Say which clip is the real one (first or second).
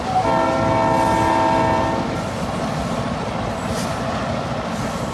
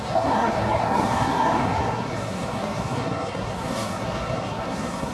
first